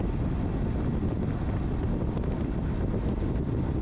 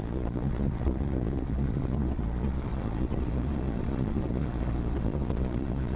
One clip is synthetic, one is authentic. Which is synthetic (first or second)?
second